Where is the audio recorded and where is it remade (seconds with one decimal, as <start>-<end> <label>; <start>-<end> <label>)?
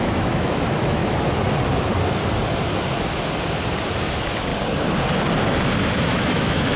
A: 0.0-1.0 remade; 1.0-3.9 recorded; 3.9-4.5 remade; 4.5-6.0 recorded; 6.0-6.8 remade